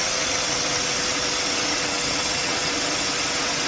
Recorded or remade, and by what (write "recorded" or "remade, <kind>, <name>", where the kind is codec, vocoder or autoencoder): remade, vocoder, WaveNeXt